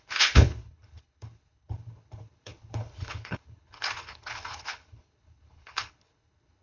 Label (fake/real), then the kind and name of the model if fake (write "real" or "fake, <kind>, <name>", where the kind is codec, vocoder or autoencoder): fake, codec, HILCodec